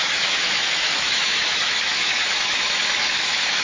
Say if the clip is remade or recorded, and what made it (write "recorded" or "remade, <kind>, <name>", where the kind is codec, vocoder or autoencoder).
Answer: remade, autoencoder, DAC-VAE